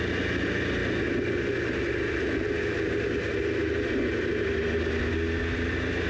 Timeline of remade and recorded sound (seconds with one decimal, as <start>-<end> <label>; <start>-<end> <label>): 0.0-6.1 recorded